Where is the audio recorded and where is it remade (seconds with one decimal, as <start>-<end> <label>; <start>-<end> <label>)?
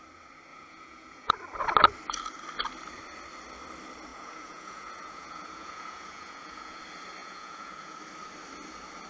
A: 0.0-0.5 recorded; 0.5-1.3 remade; 1.3-4.1 recorded; 4.1-6.8 remade; 6.8-7.2 recorded; 7.2-8.0 remade; 8.0-9.1 recorded